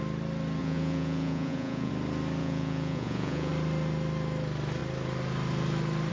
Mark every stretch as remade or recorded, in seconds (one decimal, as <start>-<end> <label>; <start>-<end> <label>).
0.0-0.6 recorded; 0.6-1.9 remade; 1.9-2.4 recorded; 2.4-3.5 remade; 3.5-6.1 recorded